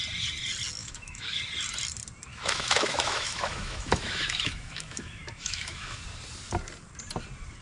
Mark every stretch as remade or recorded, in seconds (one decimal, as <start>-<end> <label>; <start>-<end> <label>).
0.0-0.8 recorded; 0.8-1.4 remade; 1.4-2.3 recorded; 2.3-6.0 remade; 6.0-7.6 recorded